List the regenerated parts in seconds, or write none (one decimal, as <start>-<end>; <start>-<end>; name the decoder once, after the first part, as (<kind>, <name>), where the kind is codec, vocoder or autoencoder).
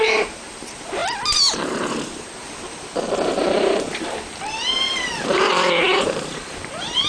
0.0-7.1 (vocoder, BigVGAN v2)